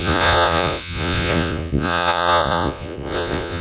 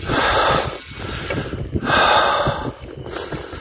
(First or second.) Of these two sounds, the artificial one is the first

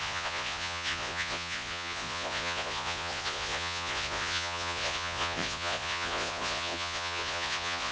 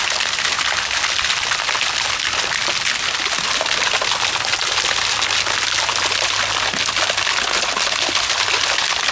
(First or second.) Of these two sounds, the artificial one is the first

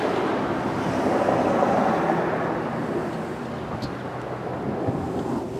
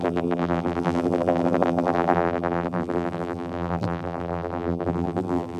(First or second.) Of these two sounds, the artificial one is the second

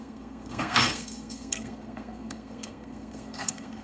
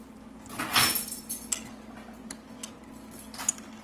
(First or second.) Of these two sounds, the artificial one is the first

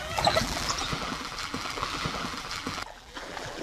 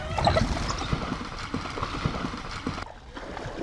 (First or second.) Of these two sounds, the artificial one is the first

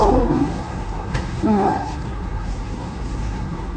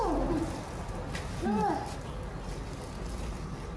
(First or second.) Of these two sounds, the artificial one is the first